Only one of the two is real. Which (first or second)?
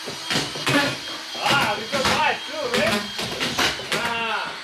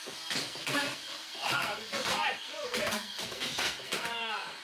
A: first